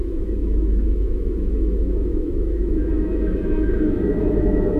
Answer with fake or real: fake